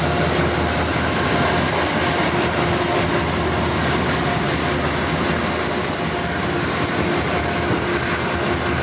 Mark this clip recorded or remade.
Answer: recorded